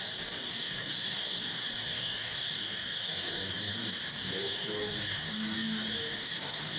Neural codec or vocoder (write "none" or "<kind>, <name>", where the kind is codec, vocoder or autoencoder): codec, DAC